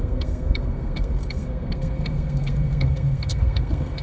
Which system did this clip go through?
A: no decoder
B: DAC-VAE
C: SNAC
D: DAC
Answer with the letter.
C